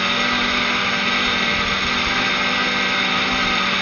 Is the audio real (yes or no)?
yes